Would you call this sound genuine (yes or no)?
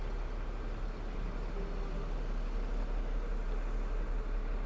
yes